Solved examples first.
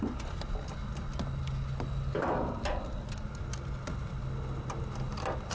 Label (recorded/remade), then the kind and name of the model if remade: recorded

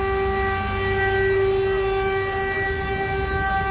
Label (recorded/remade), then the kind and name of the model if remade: recorded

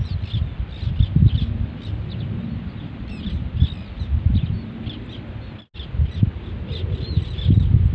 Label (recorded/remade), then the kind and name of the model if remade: recorded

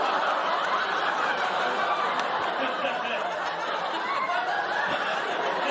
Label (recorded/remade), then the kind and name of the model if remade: recorded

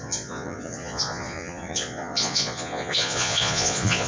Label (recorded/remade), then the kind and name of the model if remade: remade, vocoder, Vocos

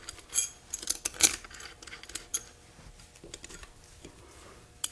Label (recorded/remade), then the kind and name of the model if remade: recorded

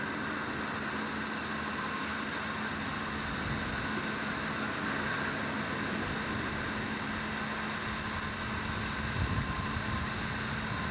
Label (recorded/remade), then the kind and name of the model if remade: recorded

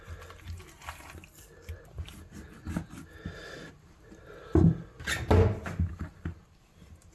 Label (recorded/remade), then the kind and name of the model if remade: recorded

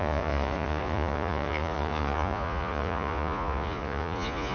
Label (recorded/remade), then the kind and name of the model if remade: remade, vocoder, Vocos